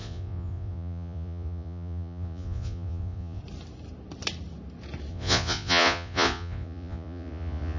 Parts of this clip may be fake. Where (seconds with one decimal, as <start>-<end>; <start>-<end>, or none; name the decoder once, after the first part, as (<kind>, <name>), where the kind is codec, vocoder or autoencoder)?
0.0-3.4 (vocoder, Vocos); 5.1-7.8